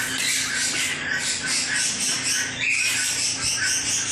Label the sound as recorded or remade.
recorded